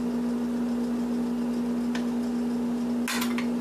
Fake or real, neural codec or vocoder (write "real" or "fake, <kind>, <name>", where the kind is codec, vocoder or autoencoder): real